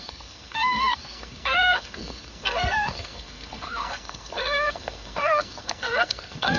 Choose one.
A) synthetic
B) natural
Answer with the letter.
A